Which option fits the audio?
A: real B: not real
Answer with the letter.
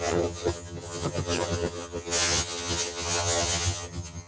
B